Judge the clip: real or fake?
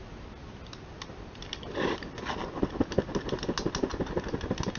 real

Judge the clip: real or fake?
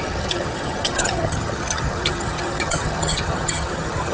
fake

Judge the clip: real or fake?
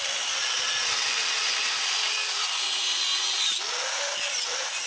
real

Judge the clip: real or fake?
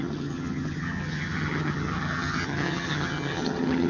fake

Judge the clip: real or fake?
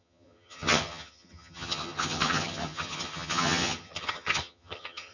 fake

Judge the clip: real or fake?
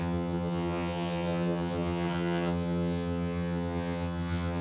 fake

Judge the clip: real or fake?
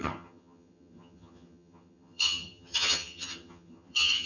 fake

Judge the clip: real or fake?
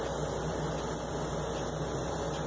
real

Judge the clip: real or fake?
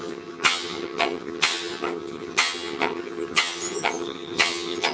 fake